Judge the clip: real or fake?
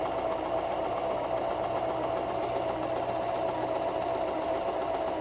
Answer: real